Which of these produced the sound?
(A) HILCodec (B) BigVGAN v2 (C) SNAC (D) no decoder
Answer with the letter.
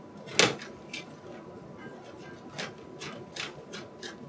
D